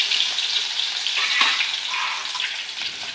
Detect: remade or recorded remade